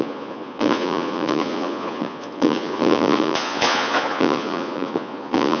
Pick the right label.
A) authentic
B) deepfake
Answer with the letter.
B